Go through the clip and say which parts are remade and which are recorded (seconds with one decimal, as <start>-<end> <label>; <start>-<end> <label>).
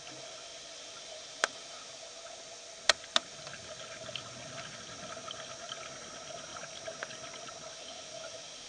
0.0-8.7 recorded